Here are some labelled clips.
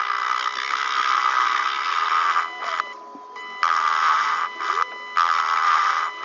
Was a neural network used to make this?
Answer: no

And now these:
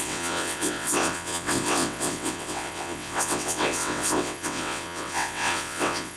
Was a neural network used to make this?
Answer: yes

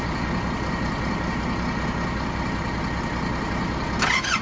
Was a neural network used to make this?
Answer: no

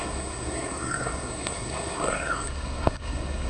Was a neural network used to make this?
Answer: yes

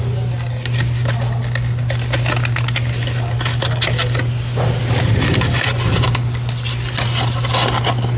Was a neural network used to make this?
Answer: no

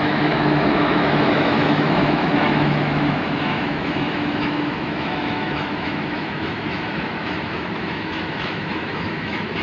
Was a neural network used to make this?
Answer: yes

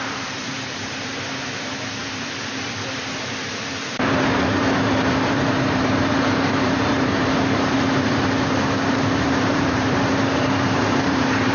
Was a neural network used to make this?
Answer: yes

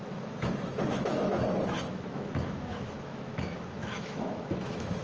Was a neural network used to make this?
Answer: yes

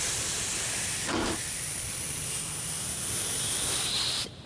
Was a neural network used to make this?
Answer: no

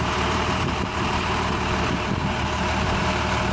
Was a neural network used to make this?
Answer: yes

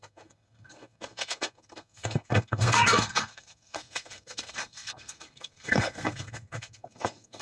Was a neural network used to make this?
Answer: yes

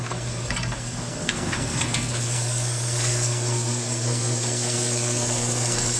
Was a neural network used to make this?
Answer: yes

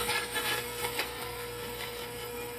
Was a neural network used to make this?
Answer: yes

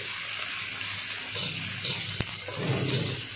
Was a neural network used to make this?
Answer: no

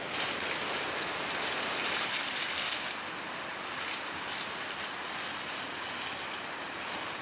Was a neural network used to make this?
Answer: no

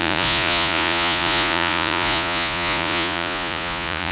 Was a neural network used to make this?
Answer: yes